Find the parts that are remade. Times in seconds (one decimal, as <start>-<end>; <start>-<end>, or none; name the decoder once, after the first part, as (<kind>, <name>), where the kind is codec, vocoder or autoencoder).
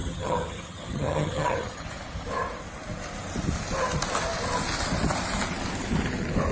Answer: 0.0-1.8 (vocoder, HiFi-GAN)